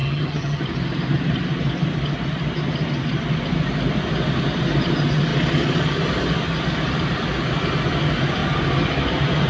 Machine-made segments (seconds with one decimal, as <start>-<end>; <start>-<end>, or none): 0.0-0.6